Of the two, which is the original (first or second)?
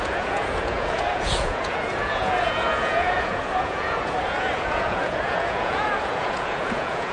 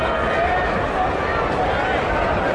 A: second